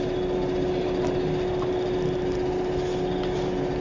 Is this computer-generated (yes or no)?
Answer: no